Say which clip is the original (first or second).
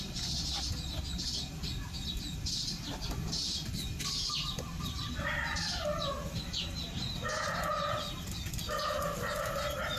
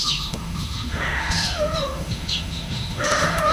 first